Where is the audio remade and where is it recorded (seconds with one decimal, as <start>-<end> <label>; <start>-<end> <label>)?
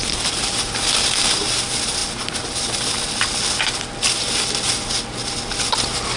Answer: 0.0-6.2 recorded